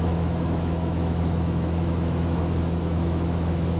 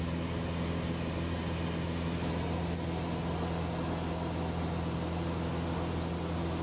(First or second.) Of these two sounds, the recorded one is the second